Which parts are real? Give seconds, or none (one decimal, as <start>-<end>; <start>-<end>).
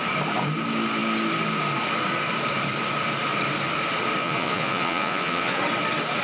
0.0-4.2; 5.6-6.2